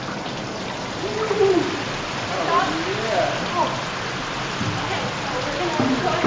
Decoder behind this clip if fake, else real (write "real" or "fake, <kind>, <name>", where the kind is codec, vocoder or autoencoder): real